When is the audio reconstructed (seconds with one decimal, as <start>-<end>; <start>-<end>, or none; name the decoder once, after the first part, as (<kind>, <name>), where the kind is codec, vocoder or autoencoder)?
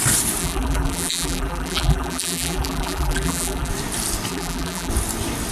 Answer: 0.4-3.7 (vocoder, BigVGAN v2); 4.3-4.9